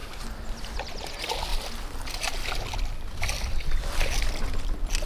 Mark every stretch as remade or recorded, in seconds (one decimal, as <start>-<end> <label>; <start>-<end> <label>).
0.0-5.1 recorded